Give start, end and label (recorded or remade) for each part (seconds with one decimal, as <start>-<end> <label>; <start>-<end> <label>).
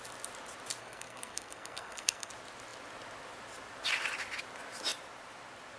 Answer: 0.0-0.8 recorded; 0.8-2.3 remade; 2.3-5.8 recorded